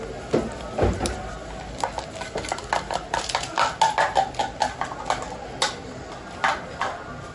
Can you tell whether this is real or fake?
real